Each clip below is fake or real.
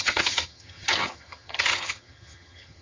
fake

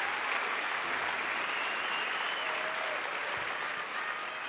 real